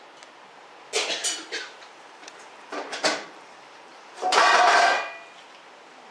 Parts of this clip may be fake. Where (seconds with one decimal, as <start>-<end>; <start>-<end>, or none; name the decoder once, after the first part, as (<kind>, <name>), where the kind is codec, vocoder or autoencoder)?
1.2-4.5 (vocoder, BigVGAN v2)